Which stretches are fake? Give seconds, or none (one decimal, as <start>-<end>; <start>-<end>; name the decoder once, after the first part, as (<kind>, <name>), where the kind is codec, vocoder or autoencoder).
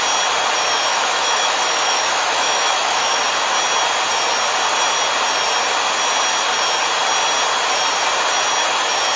0.9-3.2 (autoencoder, DAC-VAE)